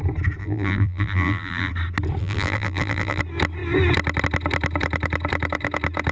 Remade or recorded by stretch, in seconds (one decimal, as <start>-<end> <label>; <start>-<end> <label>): 0.0-0.4 recorded; 0.4-1.7 remade; 1.7-2.2 recorded; 2.2-3.2 remade; 3.2-6.1 recorded